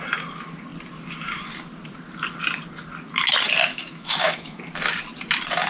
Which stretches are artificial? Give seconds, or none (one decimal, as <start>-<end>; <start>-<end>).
3.7-4.6